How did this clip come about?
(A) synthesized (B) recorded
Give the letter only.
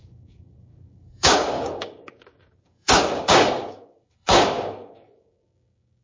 A